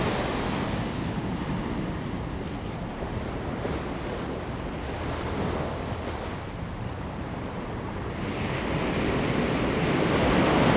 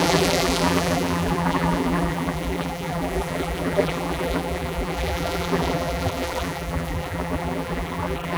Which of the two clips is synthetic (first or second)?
second